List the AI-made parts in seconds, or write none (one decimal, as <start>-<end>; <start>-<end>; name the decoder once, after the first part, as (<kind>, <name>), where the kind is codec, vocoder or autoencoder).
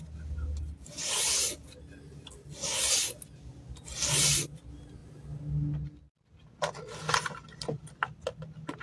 none